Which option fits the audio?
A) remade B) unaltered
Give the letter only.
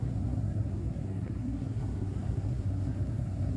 A